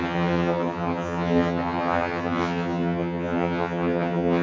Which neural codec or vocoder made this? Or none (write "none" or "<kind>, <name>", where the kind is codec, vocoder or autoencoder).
vocoder, HiFi-GAN